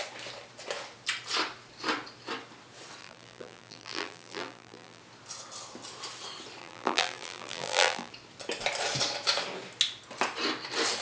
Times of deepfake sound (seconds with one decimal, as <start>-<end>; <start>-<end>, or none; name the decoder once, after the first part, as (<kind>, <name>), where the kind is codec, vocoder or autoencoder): 3.0-5.0 (vocoder, BigVGAN v2); 6.6-8.1